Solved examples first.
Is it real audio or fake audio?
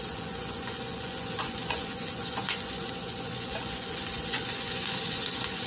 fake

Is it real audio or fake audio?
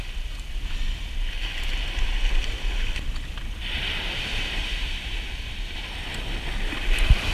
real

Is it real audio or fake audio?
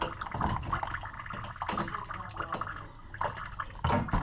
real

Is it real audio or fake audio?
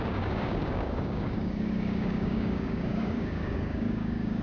fake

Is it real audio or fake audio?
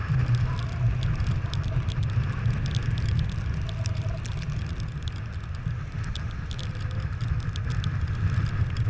real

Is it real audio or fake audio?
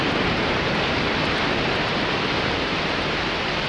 real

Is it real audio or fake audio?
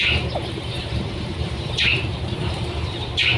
fake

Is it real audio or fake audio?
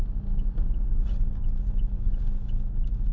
real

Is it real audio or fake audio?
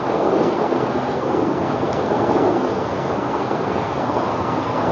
fake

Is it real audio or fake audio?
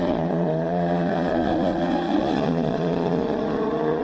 fake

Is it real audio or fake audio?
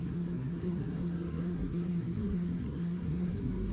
fake